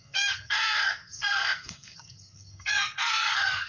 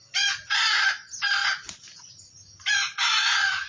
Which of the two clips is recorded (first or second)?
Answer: second